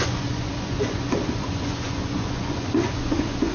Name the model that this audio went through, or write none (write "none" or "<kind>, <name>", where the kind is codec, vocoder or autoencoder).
vocoder, Vocos